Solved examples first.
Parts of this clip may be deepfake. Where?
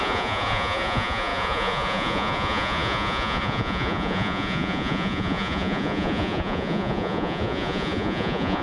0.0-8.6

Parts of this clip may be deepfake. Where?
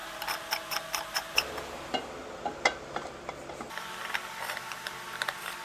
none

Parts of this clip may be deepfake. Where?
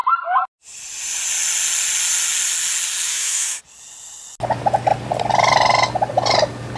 3.1-3.6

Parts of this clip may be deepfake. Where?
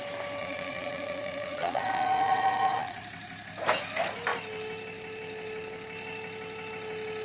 0.4-3.0